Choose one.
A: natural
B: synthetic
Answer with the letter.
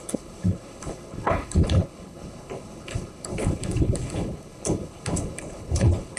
B